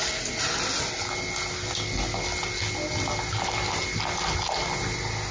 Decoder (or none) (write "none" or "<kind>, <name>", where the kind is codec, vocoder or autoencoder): none